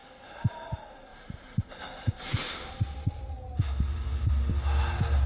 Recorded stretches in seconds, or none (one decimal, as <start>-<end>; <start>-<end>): 0.0-1.1; 3.7-5.3